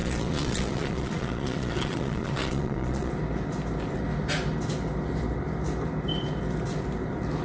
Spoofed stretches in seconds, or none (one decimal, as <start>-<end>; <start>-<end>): 0.0-3.1